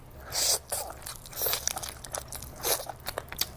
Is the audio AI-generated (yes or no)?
no